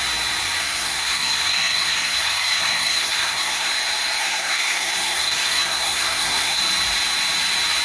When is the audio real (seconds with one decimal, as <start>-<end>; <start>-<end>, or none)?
0.0-0.6; 3.7-4.2; 6.6-7.8